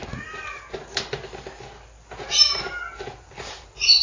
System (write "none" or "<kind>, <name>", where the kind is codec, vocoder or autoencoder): none